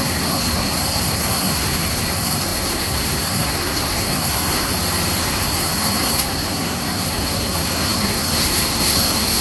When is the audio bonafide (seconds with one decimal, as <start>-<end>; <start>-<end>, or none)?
4.7-5.2